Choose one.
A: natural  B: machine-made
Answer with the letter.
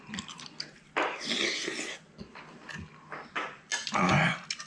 A